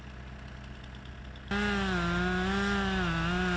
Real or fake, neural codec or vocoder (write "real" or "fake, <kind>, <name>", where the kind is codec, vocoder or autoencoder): real